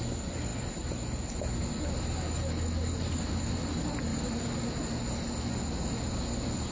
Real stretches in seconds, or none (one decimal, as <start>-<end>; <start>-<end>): 0.0-6.7